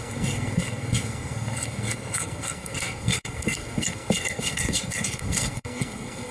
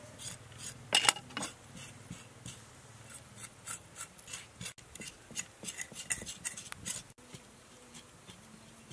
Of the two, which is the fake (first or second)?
first